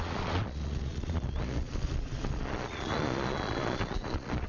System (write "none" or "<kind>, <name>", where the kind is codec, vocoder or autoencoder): vocoder, Vocos